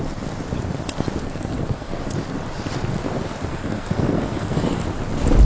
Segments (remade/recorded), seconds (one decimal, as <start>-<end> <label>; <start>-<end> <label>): 0.0-1.2 recorded; 1.2-2.0 remade; 2.0-3.5 recorded; 3.5-4.8 remade; 4.8-5.4 recorded